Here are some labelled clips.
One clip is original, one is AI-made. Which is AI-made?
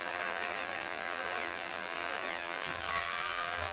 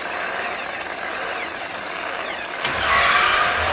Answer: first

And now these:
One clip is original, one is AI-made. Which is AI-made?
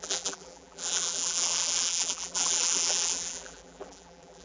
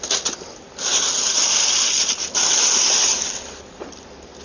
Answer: first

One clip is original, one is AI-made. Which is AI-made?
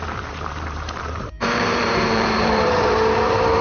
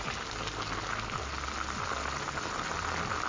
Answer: first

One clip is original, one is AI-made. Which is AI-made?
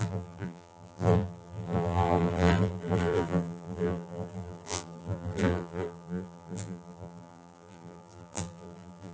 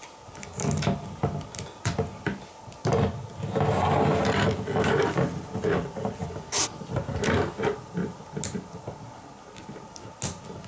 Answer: first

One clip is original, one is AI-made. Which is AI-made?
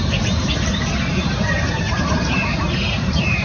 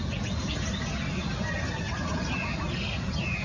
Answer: first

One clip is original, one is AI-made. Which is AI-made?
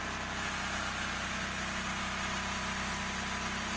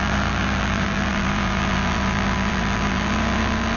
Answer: second